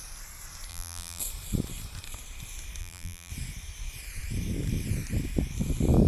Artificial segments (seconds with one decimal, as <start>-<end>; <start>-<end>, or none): 0.7-1.2; 2.8-3.3